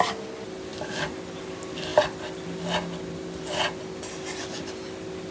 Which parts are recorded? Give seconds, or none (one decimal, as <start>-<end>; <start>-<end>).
0.0-5.3